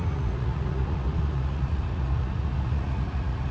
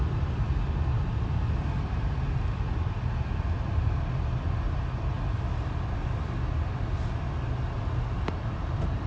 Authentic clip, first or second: second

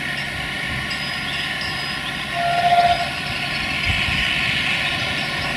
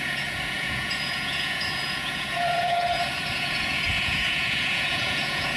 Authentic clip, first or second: first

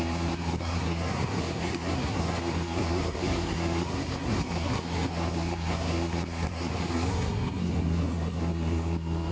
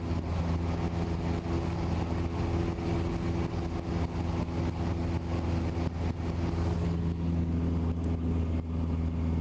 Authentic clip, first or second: second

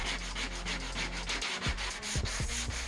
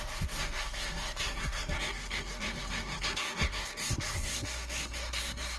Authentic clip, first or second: first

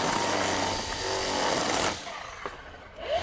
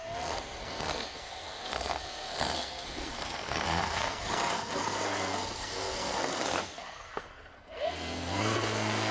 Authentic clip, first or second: first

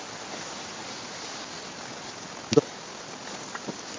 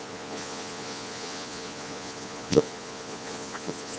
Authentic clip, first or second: first